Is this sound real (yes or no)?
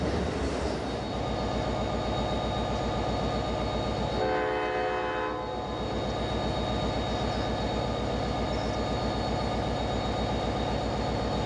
yes